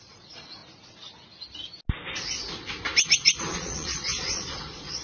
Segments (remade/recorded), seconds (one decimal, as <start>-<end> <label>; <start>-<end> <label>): 0.0-0.6 remade; 0.6-3.5 recorded; 3.5-5.0 remade